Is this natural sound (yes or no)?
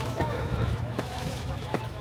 no